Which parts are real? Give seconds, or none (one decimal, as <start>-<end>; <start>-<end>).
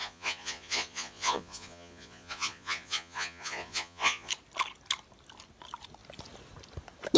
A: 4.3-7.2